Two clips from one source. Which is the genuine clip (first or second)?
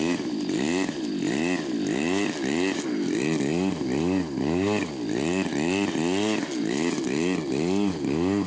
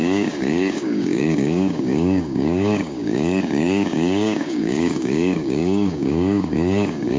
first